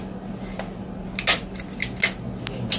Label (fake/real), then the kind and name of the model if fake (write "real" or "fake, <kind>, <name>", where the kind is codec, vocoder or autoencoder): real